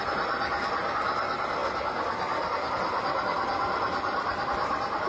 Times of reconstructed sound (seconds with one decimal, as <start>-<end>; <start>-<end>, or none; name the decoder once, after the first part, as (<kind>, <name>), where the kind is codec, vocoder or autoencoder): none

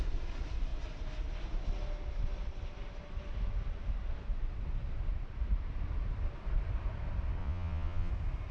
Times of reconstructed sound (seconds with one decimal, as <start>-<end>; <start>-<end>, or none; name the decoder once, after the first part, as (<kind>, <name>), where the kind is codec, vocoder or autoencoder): 7.4-8.1 (vocoder, Vocos)

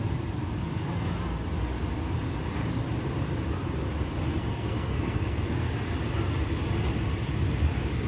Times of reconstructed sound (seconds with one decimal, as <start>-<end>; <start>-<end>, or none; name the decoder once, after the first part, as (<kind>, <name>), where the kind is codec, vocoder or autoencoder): 4.3-5.7 (codec, SNAC)

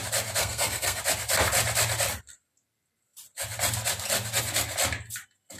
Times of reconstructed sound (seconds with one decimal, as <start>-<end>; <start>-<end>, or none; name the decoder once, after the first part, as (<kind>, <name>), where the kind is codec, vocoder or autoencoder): 0.4-1.0 (codec, SNAC)

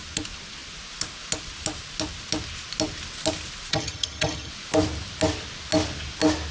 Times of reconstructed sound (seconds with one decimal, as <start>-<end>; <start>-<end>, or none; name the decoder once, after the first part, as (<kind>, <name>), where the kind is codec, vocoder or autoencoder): 3.7-4.5 (vocoder, HiFi-GAN)

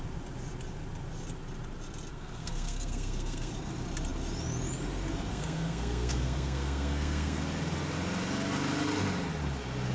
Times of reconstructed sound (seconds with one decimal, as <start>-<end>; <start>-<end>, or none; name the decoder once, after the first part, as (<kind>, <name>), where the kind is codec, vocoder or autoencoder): 2.1-3.5 (codec, SNAC); 5.3-7.4

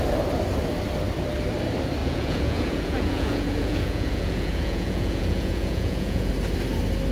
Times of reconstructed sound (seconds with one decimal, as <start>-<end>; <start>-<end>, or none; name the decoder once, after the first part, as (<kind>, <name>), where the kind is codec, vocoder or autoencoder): 2.0-6.3 (vocoder, Vocos)